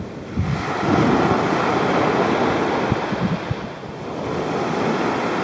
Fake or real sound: real